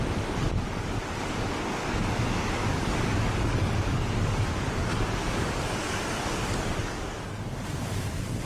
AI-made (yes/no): yes